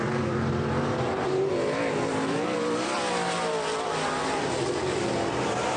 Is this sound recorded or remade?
remade